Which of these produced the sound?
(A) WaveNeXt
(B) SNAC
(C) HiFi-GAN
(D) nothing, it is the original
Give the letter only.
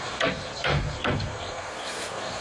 B